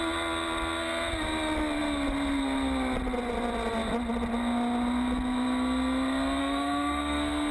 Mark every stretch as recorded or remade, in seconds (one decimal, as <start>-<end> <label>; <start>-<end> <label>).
0.0-6.4 recorded; 6.4-7.5 remade